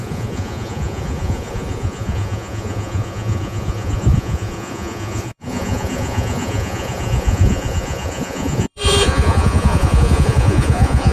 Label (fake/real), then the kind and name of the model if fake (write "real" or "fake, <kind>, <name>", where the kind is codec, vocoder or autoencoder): fake, vocoder, Vocos